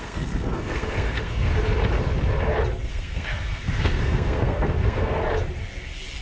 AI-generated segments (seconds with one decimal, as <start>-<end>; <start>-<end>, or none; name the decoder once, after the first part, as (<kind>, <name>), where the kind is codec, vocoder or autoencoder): 0.0-1.5 (codec, SNAC); 2.9-5.2